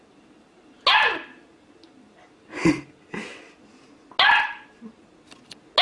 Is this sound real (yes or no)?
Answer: yes